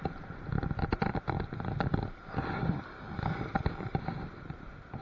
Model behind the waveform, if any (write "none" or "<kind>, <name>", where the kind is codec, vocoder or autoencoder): none